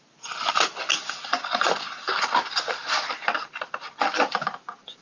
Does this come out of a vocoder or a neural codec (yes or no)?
no